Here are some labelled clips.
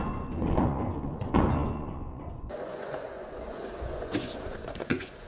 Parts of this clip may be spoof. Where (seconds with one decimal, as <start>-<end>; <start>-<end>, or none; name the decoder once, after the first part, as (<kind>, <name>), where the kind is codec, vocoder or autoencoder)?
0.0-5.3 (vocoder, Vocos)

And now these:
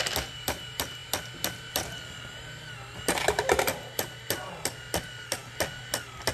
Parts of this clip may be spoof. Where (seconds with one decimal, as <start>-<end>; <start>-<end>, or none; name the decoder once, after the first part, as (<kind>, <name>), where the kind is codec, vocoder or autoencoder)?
none

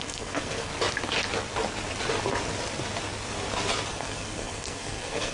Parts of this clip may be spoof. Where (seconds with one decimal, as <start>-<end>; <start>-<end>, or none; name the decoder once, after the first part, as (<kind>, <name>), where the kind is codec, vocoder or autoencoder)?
0.0-0.7 (codec, SNAC); 3.9-5.3

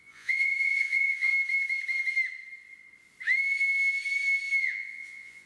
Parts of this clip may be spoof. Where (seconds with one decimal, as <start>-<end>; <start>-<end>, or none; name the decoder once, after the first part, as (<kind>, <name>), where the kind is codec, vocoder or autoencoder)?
0.0-1.3 (vocoder, Vocos); 4.6-5.5

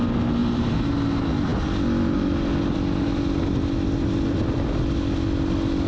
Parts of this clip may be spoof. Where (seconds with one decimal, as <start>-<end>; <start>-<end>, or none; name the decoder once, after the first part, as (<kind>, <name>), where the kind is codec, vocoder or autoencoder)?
0.4-0.9 (vocoder, BigVGAN v2)

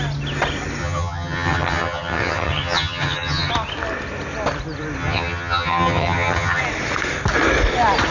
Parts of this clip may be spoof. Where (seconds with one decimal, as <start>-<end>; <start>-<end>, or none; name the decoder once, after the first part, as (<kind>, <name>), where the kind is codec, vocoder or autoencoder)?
0.8-3.5 (vocoder, HiFi-GAN); 5.0-6.6

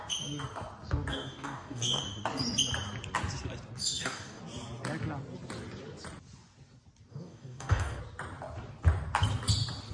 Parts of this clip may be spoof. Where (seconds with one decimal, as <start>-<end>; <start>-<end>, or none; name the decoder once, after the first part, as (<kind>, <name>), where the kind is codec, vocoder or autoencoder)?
1.1-2.0 (codec, DAC); 3.8-4.4; 7.1-8.0